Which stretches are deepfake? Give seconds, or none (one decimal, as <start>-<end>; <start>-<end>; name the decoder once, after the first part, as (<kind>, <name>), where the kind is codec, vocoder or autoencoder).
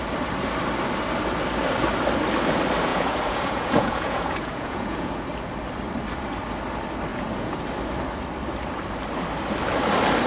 2.9-5.1 (vocoder, Vocos); 7.1-7.6